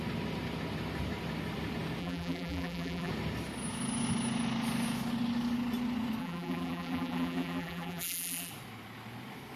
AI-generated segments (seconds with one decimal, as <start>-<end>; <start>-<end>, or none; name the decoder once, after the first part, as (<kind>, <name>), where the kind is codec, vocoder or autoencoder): 2.0-3.1 (vocoder, BigVGAN v2); 6.2-8.5

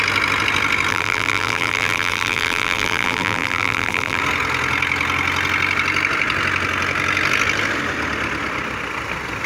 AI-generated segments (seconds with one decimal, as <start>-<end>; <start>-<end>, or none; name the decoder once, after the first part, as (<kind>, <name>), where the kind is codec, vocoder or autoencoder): 0.9-4.2 (vocoder, BigVGAN v2)